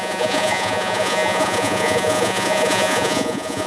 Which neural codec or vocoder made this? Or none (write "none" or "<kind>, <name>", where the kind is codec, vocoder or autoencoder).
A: vocoder, Vocos